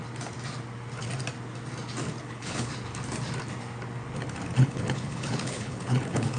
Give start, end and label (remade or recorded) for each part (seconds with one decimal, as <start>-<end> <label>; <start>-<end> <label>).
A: 0.0-2.2 recorded; 2.2-2.7 remade; 2.7-4.6 recorded; 4.6-6.4 remade